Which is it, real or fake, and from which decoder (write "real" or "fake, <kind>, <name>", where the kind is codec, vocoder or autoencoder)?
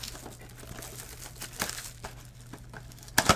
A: real